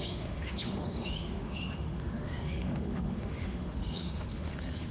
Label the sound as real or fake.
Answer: fake